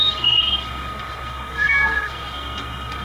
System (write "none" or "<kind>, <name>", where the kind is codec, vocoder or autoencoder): codec, SNAC